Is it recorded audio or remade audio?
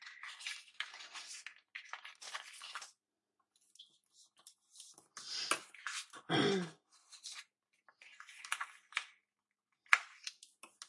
recorded